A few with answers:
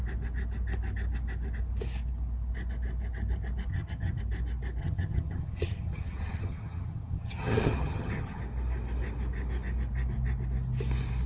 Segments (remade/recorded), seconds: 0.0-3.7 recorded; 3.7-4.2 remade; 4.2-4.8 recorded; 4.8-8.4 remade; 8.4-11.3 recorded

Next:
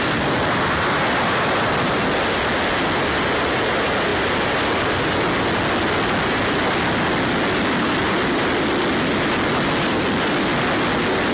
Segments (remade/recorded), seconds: 0.0-11.3 recorded

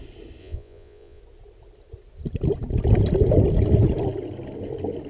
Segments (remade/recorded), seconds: 0.0-0.4 recorded; 0.4-1.2 remade; 1.2-5.1 recorded

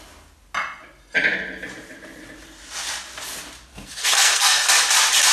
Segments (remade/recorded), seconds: 0.0-3.7 recorded; 3.7-4.7 remade; 4.7-5.3 recorded

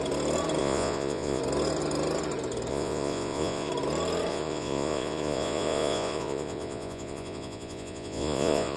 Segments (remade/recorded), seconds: 0.0-0.6 recorded; 0.6-1.4 remade; 1.4-2.7 recorded; 2.7-3.7 remade; 3.7-4.3 recorded; 4.3-8.8 remade